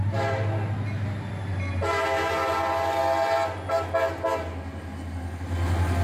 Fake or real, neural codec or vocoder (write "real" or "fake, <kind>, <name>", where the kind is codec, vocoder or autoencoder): real